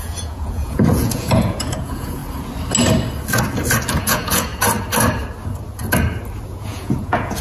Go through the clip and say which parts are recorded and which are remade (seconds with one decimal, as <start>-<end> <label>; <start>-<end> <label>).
0.0-2.2 remade; 2.2-3.9 recorded; 3.9-4.5 remade; 4.5-6.5 recorded; 6.5-7.4 remade